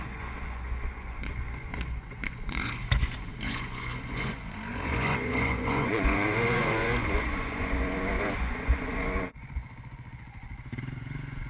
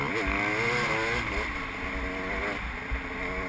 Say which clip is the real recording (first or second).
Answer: second